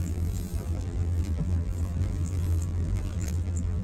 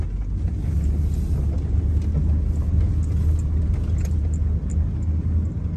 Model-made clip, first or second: first